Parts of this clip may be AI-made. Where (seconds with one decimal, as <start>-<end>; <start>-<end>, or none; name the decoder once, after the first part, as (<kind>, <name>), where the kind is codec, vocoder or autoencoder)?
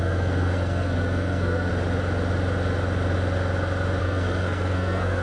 0.0-1.7 (codec, SNAC); 4.0-5.2